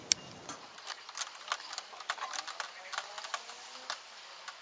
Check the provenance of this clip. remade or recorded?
recorded